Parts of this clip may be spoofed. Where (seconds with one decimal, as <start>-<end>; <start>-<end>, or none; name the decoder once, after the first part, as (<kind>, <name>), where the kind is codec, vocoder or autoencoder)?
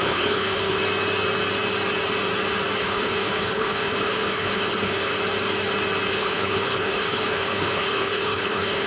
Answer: 0.0-0.8 (codec, HILCodec); 2.8-5.2; 6.1-8.9